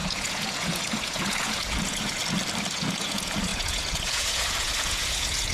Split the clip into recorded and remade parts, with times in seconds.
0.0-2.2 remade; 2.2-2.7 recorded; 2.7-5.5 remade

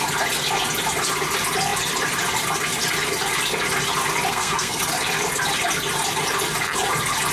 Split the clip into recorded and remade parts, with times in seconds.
0.0-4.3 recorded; 4.3-4.8 remade; 4.8-7.3 recorded

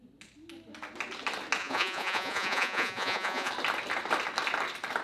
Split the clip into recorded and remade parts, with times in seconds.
0.0-1.6 recorded; 1.6-3.5 remade; 3.5-5.0 recorded

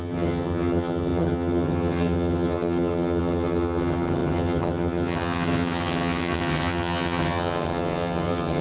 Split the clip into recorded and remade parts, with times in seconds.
0.0-8.6 remade

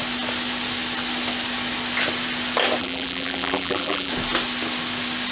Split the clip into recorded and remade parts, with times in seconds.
0.0-2.8 recorded; 2.8-4.1 remade; 4.1-5.3 recorded

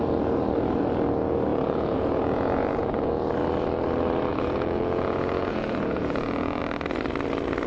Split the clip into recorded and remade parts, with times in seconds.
0.0-1.5 recorded; 1.5-3.1 remade; 3.1-4.3 recorded; 4.3-6.6 remade; 6.6-7.7 recorded

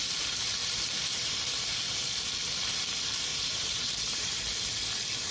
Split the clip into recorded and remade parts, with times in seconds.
0.0-0.6 recorded; 0.6-1.3 remade; 1.3-3.3 recorded; 3.3-4.3 remade; 4.3-5.3 recorded